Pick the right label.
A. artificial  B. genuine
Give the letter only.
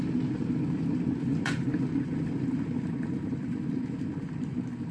A